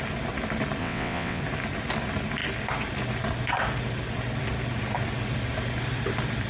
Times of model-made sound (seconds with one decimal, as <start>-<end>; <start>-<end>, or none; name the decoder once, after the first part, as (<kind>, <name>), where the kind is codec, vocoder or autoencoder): 0.8-1.4 (vocoder, WaveNeXt)